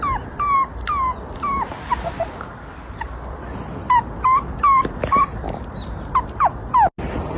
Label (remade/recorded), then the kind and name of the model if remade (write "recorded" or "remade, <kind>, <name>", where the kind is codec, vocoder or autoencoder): recorded